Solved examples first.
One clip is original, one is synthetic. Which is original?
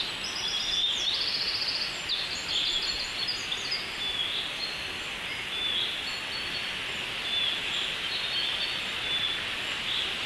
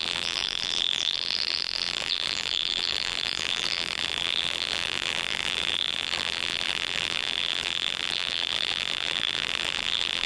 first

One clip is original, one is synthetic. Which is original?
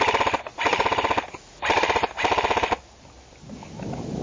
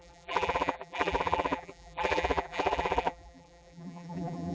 first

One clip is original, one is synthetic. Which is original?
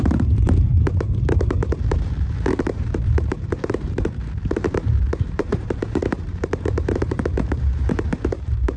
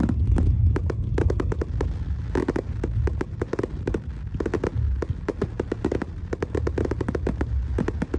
second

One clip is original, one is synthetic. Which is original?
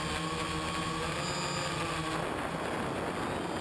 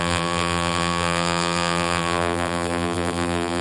first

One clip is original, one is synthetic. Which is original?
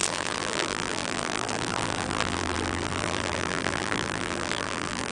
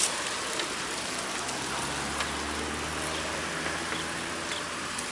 second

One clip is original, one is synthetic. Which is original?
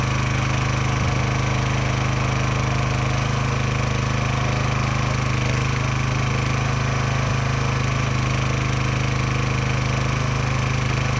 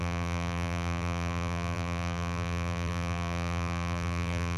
first